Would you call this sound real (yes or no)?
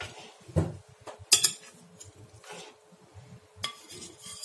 yes